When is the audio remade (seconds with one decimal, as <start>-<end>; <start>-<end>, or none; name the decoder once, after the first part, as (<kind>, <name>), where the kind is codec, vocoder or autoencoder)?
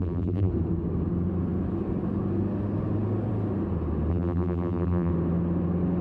0.0-0.5 (vocoder, BigVGAN v2); 4.1-5.1